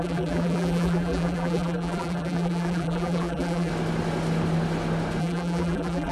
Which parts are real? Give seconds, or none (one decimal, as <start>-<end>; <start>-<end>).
3.7-5.2